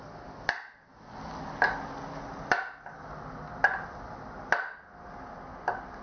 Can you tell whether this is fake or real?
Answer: real